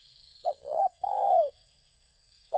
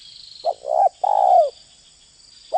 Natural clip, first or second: second